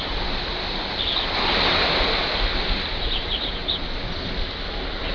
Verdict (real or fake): real